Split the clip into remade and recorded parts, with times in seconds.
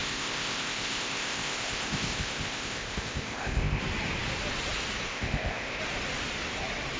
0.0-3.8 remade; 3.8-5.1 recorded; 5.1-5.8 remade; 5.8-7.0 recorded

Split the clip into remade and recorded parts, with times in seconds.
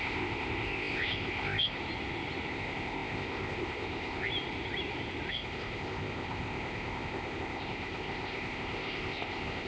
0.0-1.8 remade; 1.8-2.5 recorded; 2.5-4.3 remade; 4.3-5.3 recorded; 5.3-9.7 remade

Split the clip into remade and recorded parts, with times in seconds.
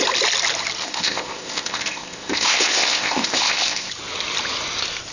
0.0-0.8 recorded; 0.8-3.9 remade; 3.9-5.1 recorded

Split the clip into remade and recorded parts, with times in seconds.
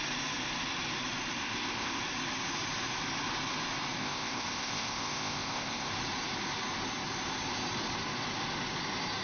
0.0-1.4 recorded; 1.4-2.0 remade; 2.0-4.0 recorded; 4.0-5.9 remade; 5.9-9.2 recorded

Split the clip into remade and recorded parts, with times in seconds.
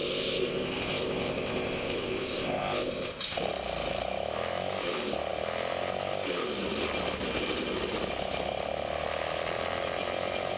0.0-3.4 remade; 3.4-10.6 recorded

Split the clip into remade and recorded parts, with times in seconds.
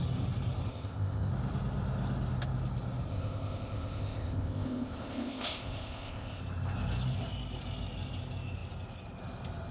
0.0-0.7 recorded; 0.7-1.3 remade; 1.3-3.1 recorded; 3.1-6.4 remade; 6.4-9.7 recorded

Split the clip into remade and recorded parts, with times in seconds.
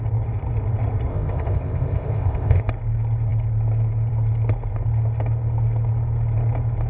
0.0-1.1 recorded; 1.1-2.6 remade; 2.6-6.9 recorded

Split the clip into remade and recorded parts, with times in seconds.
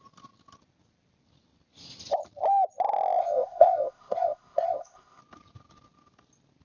0.0-3.2 recorded; 3.2-5.2 remade; 5.2-6.6 recorded